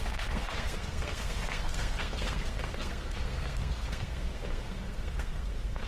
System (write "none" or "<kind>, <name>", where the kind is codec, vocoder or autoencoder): codec, SNAC